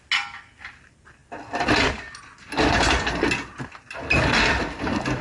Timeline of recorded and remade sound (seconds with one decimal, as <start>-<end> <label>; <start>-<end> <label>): 0.0-5.2 recorded